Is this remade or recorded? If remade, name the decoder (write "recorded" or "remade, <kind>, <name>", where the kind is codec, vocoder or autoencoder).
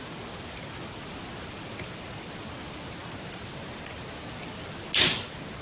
recorded